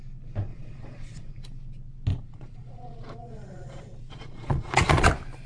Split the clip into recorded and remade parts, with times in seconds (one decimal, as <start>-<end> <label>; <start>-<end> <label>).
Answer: 0.0-0.5 recorded; 0.5-1.3 remade; 1.3-2.1 recorded; 2.1-5.1 remade; 5.1-5.5 recorded